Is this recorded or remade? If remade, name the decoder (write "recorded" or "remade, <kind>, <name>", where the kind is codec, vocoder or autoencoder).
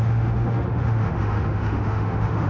remade, autoencoder, DAC-VAE